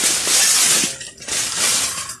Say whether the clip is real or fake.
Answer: real